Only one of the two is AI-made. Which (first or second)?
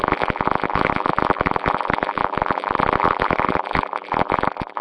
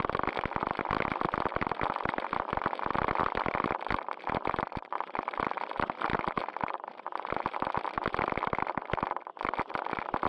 first